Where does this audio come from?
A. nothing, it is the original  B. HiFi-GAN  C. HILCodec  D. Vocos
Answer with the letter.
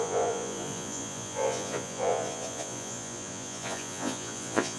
D